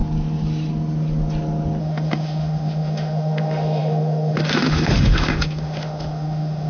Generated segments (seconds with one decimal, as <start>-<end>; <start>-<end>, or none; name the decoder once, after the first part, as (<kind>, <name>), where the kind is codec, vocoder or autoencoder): 1.8-6.7 (autoencoder, DAC-VAE)